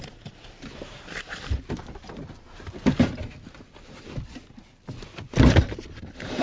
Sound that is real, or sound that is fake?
real